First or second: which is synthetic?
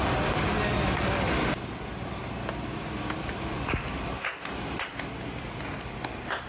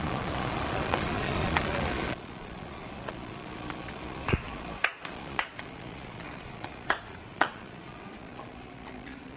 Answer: second